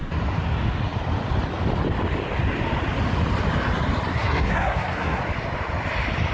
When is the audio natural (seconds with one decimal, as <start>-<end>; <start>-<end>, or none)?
0.0-4.1; 5.2-6.3